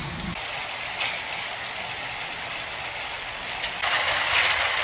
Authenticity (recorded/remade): recorded